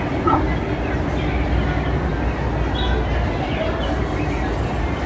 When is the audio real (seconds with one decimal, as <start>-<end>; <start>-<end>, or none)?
0.0-5.1